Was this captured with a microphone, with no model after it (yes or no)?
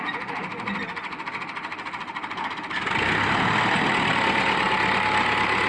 yes